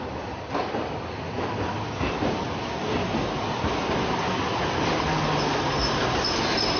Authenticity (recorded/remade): recorded